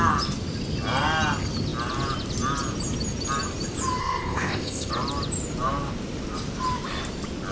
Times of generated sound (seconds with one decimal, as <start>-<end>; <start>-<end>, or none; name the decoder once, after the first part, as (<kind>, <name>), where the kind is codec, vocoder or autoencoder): 4.0-4.9 (codec, ZipCodec)